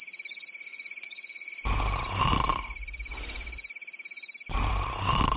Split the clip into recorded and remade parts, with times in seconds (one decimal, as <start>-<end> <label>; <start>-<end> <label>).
0.0-0.7 recorded; 0.7-1.5 remade; 1.5-5.4 recorded

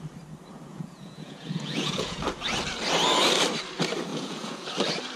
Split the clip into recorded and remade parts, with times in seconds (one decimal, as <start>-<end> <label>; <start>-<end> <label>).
0.0-0.7 recorded; 0.7-2.2 remade; 2.2-4.1 recorded; 4.1-4.7 remade; 4.7-5.2 recorded

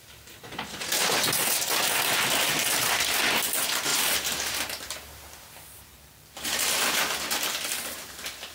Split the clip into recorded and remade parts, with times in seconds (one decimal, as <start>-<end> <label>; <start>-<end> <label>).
0.0-8.5 recorded